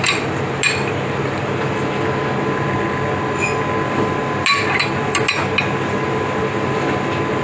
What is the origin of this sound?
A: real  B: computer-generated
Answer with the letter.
A